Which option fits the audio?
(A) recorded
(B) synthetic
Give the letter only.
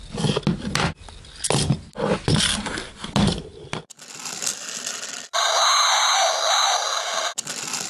A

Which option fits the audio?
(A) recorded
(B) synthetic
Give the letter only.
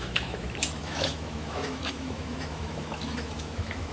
B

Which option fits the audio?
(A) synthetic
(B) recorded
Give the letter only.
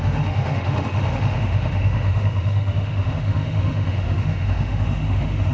A